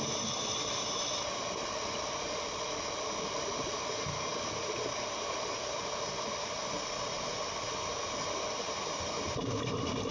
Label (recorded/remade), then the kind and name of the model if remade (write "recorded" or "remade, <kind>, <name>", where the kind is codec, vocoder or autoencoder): recorded